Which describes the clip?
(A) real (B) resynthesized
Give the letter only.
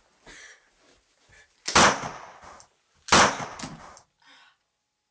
A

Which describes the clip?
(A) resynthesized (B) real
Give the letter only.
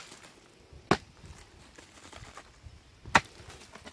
B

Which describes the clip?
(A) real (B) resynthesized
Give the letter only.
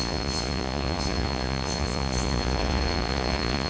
B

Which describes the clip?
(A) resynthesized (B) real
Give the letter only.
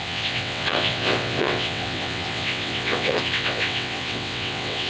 A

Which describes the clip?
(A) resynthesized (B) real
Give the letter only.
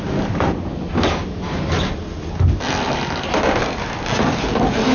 B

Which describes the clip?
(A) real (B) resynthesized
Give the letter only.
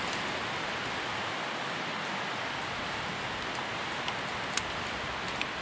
A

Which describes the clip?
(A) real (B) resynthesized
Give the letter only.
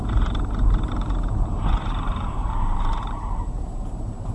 B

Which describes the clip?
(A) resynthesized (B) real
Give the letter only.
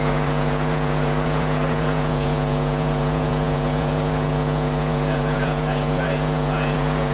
A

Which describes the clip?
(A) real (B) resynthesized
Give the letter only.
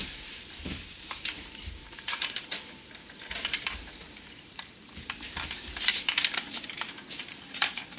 B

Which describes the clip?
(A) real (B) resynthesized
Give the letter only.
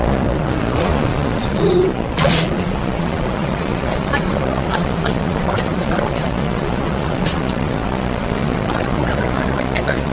B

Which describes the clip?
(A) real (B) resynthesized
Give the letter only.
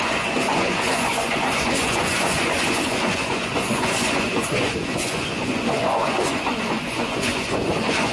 B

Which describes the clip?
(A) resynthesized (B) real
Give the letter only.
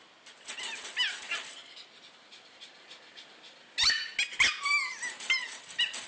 B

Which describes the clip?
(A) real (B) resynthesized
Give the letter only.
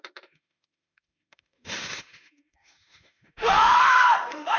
B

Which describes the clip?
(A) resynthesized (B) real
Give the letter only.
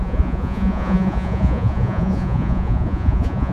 A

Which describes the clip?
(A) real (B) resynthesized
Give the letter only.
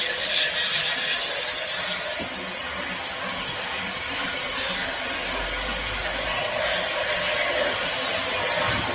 A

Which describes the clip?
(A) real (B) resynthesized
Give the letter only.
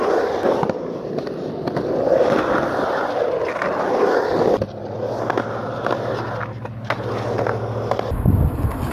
A